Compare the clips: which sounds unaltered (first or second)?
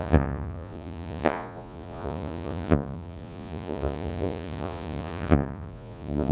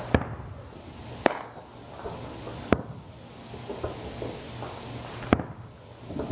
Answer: second